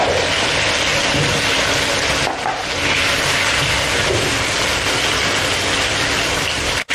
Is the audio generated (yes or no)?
no